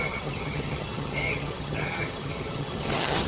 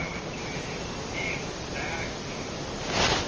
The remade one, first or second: first